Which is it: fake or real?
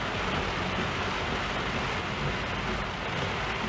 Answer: real